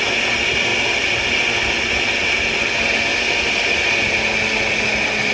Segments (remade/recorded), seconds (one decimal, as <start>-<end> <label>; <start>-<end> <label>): 0.0-3.1 recorded; 3.1-3.8 remade; 3.8-5.3 recorded